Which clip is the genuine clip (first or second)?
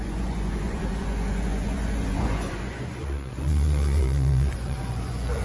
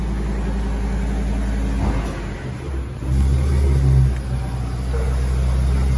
second